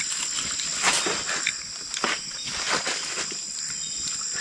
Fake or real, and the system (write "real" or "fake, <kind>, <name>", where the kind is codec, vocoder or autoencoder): real